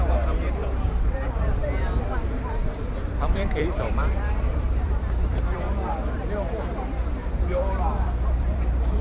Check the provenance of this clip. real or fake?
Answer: fake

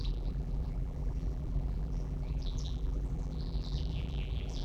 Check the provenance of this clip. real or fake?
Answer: fake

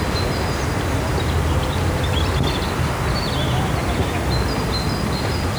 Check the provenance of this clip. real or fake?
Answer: real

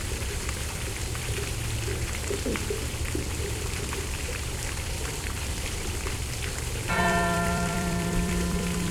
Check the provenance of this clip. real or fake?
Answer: fake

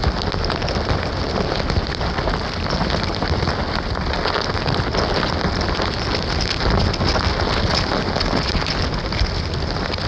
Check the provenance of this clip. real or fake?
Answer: real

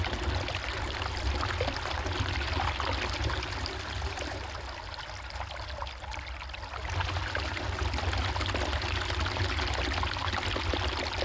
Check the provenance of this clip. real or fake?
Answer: real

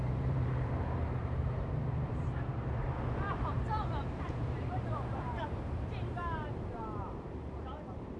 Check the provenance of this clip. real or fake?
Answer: fake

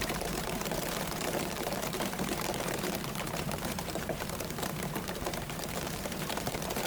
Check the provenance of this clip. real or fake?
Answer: fake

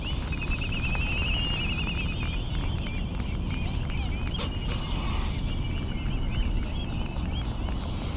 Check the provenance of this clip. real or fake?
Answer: real